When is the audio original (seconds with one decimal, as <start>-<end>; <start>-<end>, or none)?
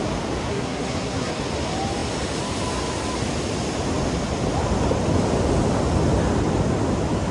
0.0-0.5; 1.3-7.3